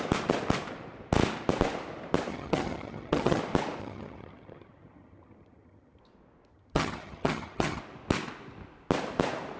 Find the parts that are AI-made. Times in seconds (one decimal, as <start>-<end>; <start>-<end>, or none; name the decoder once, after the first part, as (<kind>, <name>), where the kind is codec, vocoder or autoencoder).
2.3-3.4 (vocoder, HiFi-GAN); 3.8-6.0; 6.5-7.8